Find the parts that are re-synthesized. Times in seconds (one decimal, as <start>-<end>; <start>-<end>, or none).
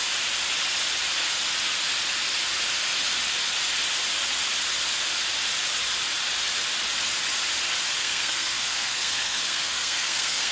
8.0-10.5